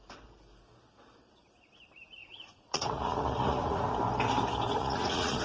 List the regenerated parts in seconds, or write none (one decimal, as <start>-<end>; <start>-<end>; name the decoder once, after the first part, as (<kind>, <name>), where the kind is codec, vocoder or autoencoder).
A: 2.2-3.9 (vocoder, Vocos); 4.7-5.4